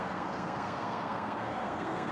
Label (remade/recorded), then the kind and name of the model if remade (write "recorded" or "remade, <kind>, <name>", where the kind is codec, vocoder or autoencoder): remade, codec, SNAC